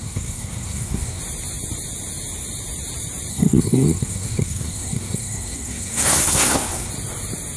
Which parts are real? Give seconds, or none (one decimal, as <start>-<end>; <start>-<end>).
1.2-3.3; 6.9-7.6